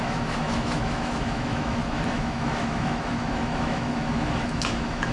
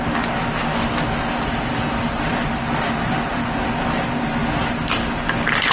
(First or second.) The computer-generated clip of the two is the first